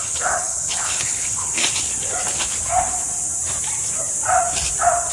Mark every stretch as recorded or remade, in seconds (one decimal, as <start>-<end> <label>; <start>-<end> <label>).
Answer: 0.0-1.6 remade; 1.6-5.1 recorded

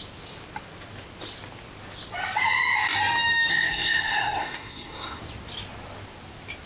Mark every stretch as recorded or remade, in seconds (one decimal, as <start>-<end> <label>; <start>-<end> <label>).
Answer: 0.0-3.5 recorded; 3.5-5.2 remade; 5.2-6.7 recorded